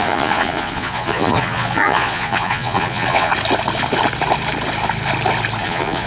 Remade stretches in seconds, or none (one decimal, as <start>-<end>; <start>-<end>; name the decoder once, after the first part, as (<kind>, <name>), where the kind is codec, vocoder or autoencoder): 0.0-3.3 (vocoder, Vocos); 5.6-6.1